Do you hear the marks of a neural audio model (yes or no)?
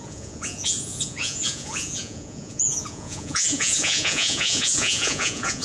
yes